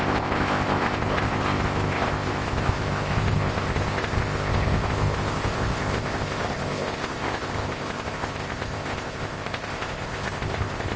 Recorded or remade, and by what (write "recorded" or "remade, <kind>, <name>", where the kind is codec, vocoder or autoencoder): remade, codec, ZipCodec